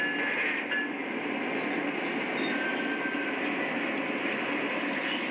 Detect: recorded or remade recorded